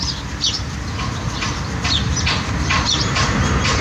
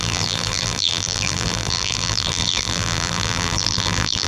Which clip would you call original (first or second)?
first